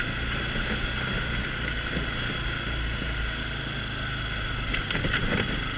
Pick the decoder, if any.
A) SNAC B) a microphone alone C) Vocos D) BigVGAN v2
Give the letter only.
B